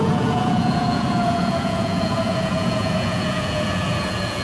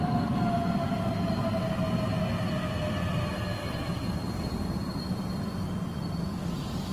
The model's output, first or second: first